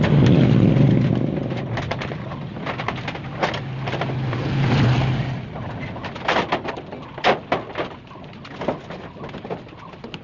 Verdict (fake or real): real